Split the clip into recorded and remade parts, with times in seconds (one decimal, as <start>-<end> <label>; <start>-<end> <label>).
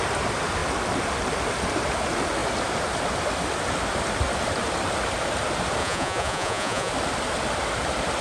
0.0-5.8 recorded; 5.8-6.9 remade; 6.9-8.2 recorded